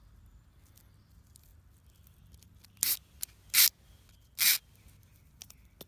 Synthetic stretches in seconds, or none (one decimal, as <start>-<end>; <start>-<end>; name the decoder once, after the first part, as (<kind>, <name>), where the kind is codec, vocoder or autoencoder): none